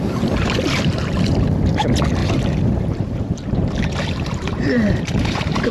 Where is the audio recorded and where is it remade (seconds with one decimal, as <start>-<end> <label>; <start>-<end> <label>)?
0.0-2.2 recorded; 2.2-5.7 remade